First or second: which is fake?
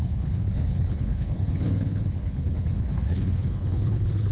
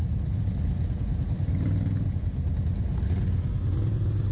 first